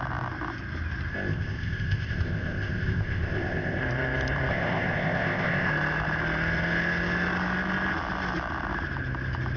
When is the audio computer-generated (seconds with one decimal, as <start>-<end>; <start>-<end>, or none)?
1.1-3.8; 4.5-5.7

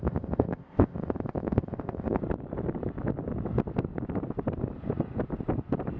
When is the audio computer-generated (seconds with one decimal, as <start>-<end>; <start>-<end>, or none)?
0.0-2.2

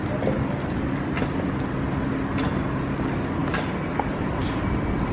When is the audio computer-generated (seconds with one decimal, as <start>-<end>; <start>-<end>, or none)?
none

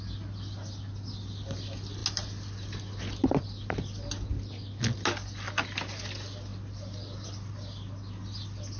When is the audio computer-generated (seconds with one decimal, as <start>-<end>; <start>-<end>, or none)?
none

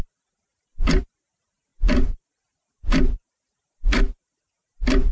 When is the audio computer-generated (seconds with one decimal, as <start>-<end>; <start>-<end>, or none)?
none

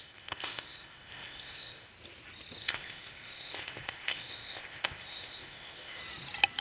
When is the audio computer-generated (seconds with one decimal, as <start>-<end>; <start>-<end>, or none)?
0.0-1.9; 2.6-6.0

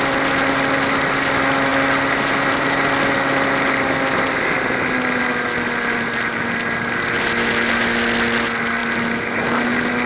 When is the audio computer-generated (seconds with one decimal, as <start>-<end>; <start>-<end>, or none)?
none

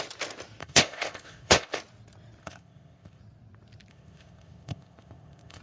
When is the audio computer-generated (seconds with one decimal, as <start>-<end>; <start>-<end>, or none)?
0.6-1.8; 2.4-3.2; 3.9-5.6